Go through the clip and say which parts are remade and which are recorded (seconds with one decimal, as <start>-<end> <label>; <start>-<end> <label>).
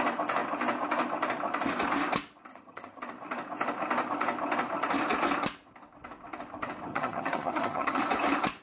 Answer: 0.0-2.5 recorded; 2.5-3.0 remade; 3.0-6.9 recorded; 6.9-8.0 remade; 8.0-8.6 recorded